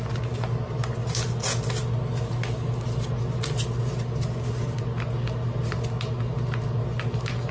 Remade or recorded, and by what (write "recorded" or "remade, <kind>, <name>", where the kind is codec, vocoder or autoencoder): recorded